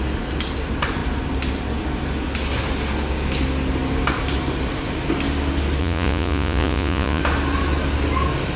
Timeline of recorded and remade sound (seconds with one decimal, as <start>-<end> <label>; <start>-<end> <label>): 0.0-5.8 recorded; 5.8-7.2 remade; 7.2-8.6 recorded

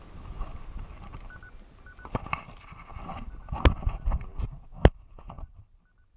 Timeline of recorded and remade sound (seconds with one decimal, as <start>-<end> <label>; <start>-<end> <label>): 0.0-6.2 recorded

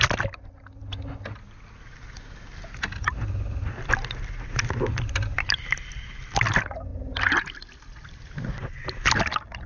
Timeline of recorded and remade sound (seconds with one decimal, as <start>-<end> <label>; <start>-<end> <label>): 0.0-9.7 recorded

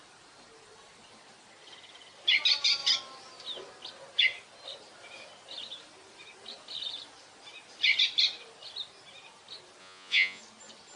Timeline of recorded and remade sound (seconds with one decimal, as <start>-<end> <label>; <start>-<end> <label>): 0.0-9.8 recorded; 9.8-10.4 remade; 10.4-11.0 recorded

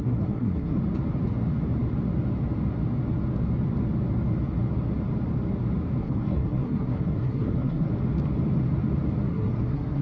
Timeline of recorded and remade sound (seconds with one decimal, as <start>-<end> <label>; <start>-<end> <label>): 0.0-0.8 remade; 0.8-6.0 recorded; 6.0-7.9 remade; 7.9-9.3 recorded; 9.3-10.0 remade

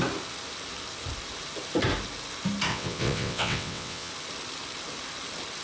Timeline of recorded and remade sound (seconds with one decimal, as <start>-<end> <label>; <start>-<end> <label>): 0.0-2.7 recorded; 2.7-4.1 remade; 4.1-5.6 recorded

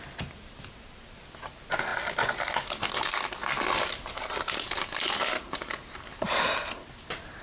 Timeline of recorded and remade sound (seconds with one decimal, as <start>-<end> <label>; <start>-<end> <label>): 0.0-7.4 recorded